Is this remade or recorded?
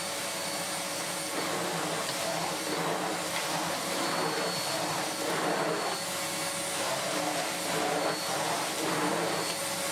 recorded